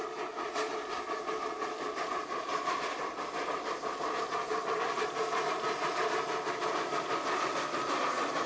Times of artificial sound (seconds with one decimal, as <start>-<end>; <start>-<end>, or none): 2.5-3.3